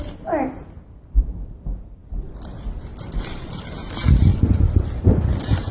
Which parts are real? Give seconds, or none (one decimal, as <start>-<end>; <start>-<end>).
0.0-5.7